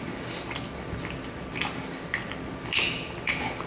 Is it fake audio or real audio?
real